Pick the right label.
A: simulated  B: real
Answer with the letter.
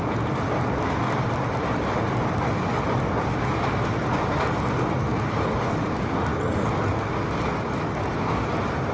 B